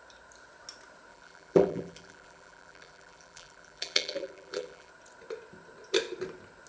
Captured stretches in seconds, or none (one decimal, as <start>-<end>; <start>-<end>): 0.0-1.1; 4.9-6.7